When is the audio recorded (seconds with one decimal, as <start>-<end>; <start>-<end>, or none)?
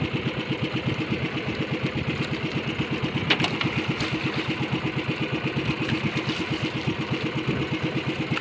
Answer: 0.0-8.4